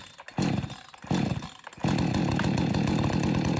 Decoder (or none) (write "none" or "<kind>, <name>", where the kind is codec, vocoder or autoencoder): none